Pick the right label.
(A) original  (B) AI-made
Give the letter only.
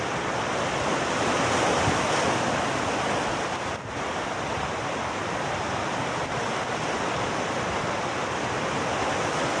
A